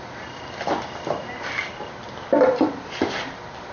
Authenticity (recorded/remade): recorded